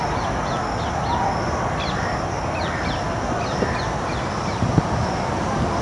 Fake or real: real